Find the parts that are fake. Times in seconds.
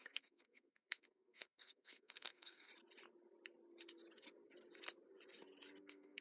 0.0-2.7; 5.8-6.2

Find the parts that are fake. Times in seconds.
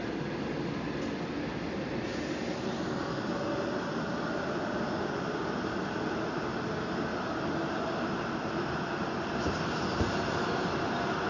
none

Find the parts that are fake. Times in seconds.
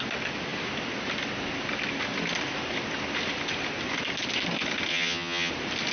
4.9-5.5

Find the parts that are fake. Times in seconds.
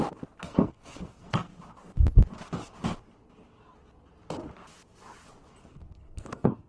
0.4-1.5; 5.6-6.7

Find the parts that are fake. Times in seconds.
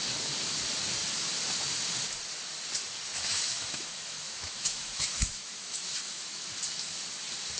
3.1-6.5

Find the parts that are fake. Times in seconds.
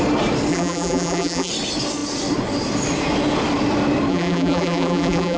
0.5-1.5; 4.1-5.4